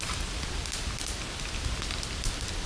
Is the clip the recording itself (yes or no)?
yes